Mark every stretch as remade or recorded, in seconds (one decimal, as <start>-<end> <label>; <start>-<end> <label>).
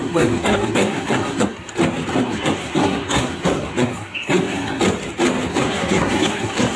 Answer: 0.0-1.7 remade; 1.7-2.1 recorded; 2.1-4.8 remade; 4.8-5.5 recorded; 5.5-6.8 remade